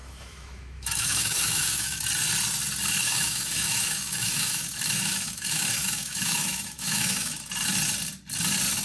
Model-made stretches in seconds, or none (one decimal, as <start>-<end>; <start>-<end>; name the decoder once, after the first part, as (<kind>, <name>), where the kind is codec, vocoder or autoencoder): 0.0-2.0 (autoencoder, DAC-VAE); 3.0-7.5